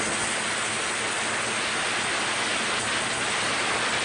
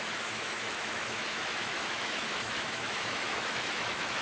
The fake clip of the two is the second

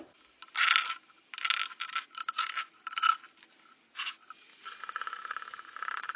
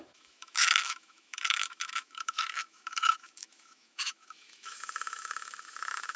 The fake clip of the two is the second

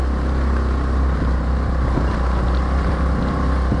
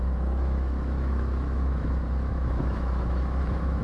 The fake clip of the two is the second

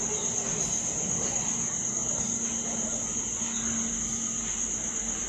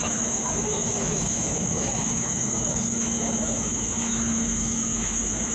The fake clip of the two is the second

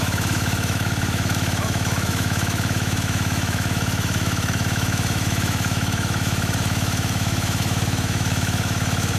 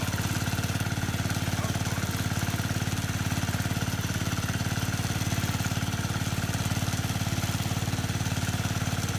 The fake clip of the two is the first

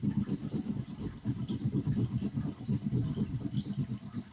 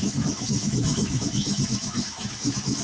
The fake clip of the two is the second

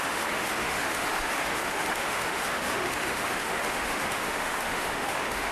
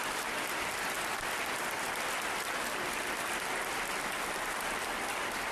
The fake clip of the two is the first